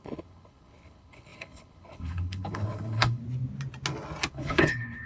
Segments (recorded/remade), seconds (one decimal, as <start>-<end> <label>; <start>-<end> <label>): 0.0-3.2 remade; 3.2-4.3 recorded; 4.3-5.1 remade